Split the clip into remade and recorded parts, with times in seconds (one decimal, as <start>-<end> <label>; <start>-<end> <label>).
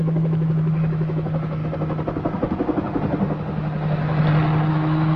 0.0-1.6 remade; 1.6-4.7 recorded; 4.7-5.2 remade